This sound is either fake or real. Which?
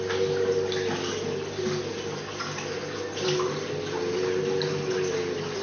real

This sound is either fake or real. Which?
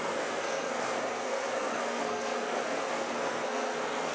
fake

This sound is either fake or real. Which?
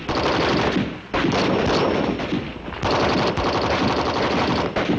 real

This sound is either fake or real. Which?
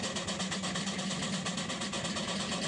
real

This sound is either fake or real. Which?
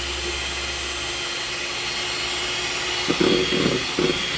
real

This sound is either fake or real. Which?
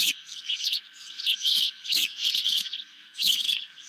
fake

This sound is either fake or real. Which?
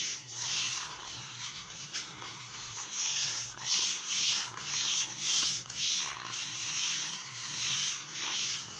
fake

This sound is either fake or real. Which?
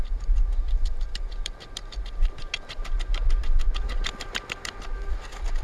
real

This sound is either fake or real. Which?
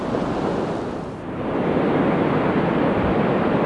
real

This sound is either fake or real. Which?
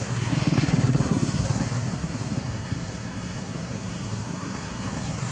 fake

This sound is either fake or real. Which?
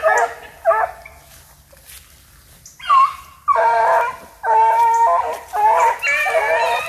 real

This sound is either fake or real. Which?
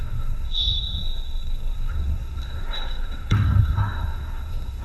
fake